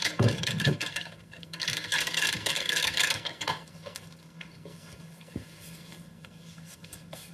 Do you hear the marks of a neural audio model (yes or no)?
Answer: yes